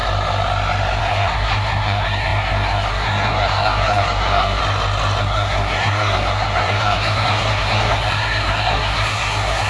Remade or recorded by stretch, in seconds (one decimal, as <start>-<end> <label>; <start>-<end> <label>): 0.0-1.0 recorded; 1.0-4.6 remade; 4.6-5.2 recorded; 5.2-9.7 remade